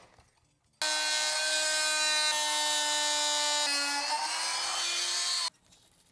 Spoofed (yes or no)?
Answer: no